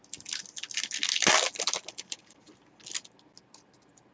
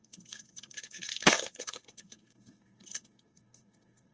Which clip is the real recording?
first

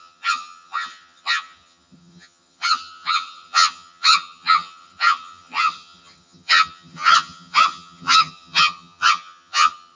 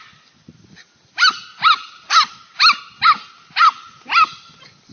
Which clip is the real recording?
second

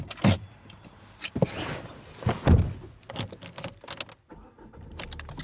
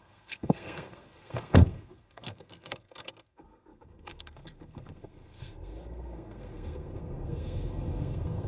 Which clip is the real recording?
first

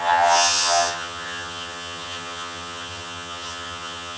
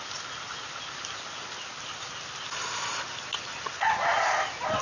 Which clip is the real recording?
second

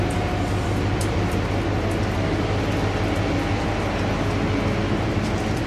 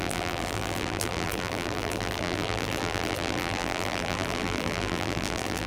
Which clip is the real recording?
first